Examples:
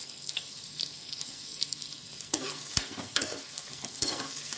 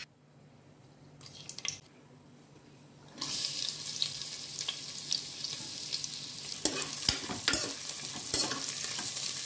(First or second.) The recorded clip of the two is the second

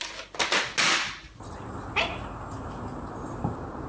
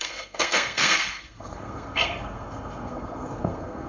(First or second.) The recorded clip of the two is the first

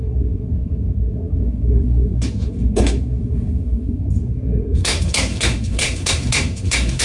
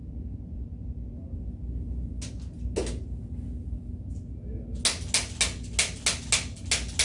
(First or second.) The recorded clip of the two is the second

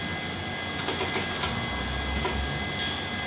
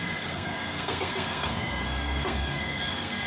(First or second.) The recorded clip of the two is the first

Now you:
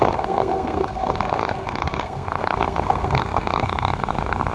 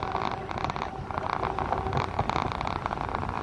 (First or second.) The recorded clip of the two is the second